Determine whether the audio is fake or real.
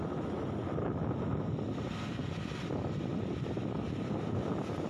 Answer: real